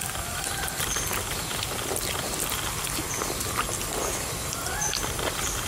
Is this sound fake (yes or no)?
yes